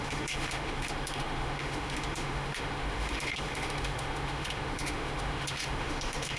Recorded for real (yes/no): no